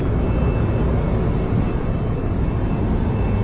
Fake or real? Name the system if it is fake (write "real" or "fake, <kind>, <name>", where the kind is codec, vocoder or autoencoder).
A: real